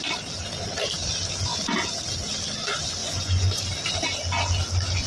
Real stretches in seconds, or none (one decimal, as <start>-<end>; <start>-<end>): 0.0-3.0; 3.6-5.1